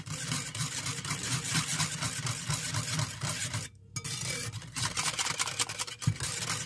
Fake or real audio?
real